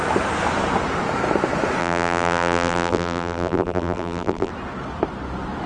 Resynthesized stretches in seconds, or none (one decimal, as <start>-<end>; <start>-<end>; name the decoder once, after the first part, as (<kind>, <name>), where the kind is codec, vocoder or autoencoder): 1.8-4.5 (vocoder, BigVGAN v2)